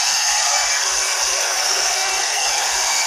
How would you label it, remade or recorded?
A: remade